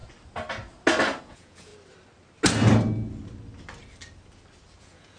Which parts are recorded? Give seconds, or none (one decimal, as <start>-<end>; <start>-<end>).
0.0-1.2; 1.7-4.8